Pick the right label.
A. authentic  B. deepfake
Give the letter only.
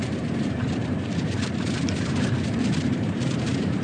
B